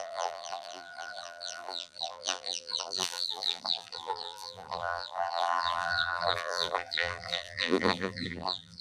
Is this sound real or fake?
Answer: fake